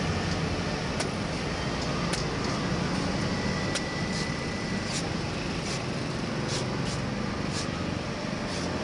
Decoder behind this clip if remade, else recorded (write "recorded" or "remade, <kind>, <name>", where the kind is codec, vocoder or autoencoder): recorded